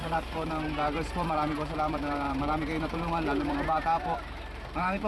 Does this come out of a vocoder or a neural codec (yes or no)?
yes